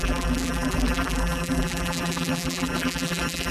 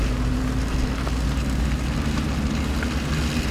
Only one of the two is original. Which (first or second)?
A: second